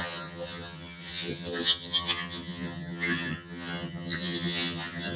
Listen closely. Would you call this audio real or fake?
fake